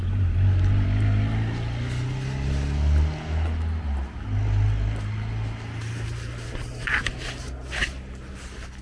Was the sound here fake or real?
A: real